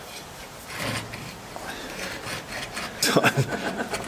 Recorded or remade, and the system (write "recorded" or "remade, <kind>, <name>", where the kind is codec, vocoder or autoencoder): recorded